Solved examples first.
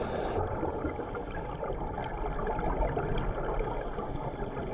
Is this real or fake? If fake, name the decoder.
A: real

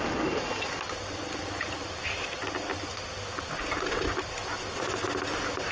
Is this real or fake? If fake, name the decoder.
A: real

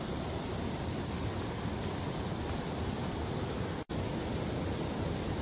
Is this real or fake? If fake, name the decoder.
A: real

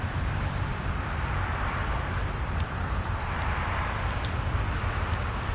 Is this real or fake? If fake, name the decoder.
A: fake, vocoder, BigVGAN v2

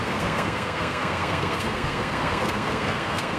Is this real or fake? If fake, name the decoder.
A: fake, codec, SNAC